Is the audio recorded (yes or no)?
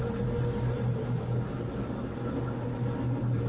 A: yes